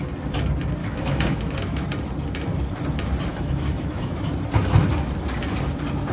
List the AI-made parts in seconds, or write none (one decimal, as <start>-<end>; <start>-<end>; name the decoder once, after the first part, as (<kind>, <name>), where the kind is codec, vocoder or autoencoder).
0.8-1.8 (autoencoder, DAC-VAE); 3.3-4.3